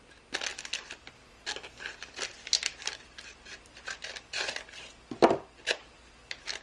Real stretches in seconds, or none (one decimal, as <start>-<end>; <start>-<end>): 0.0-6.6